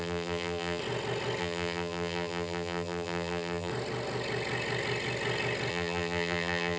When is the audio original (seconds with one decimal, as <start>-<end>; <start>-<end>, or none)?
0.8-1.4; 3.7-5.7